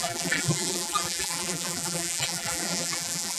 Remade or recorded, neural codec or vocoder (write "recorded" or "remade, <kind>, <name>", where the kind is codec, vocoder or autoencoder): remade, vocoder, BigVGAN v2